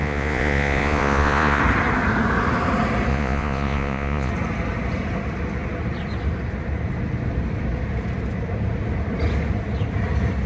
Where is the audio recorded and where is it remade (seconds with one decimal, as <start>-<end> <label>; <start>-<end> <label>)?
0.0-1.6 remade; 1.6-3.1 recorded; 3.1-4.3 remade; 4.3-10.5 recorded